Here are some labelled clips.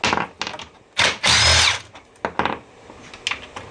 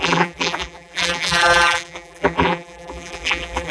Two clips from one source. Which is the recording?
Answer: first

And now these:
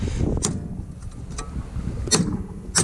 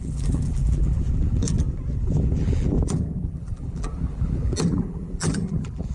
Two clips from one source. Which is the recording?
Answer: first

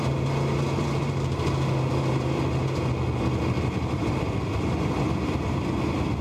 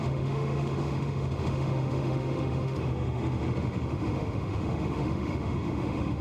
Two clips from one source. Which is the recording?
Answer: first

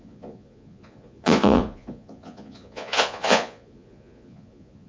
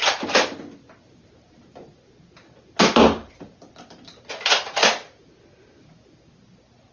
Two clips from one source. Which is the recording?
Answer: second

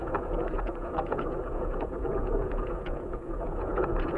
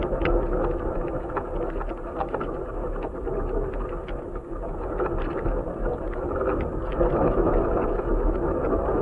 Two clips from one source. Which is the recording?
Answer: second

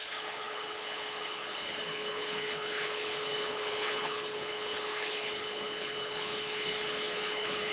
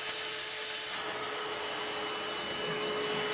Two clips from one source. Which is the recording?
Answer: second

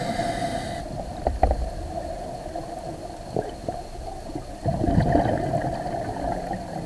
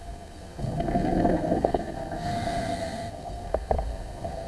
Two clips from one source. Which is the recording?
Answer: first